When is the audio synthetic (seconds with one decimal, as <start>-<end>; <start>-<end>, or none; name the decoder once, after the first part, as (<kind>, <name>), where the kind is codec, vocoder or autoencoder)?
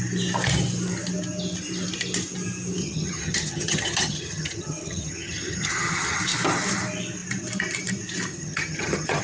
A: 2.8-6.2 (vocoder, HiFi-GAN); 8.3-9.2